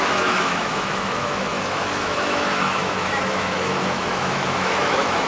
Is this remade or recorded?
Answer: remade